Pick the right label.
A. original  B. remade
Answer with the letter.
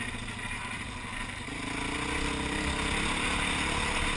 A